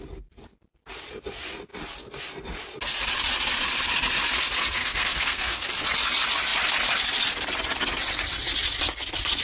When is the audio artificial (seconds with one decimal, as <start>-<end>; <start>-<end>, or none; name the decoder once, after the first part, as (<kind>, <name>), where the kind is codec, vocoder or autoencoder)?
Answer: 4.8-5.7 (codec, SNAC)